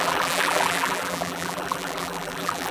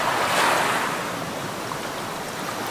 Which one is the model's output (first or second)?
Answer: first